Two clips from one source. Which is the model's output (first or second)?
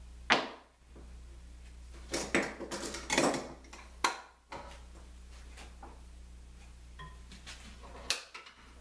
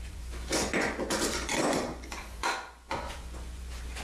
second